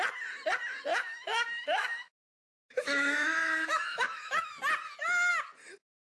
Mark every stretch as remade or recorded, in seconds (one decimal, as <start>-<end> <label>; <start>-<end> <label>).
0.0-0.9 recorded; 0.9-4.6 remade; 4.6-6.1 recorded